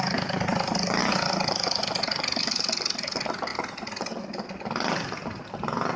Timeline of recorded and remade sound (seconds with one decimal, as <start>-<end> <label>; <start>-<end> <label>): 0.0-6.0 recorded